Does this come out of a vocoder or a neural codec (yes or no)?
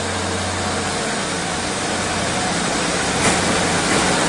no